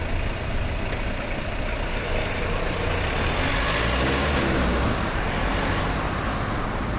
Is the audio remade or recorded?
recorded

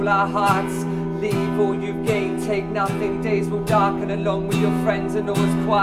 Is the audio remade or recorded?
recorded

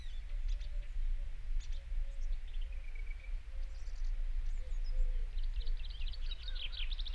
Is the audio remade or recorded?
recorded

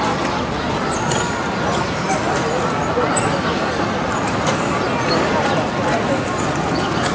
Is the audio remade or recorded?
remade